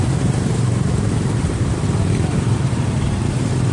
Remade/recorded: remade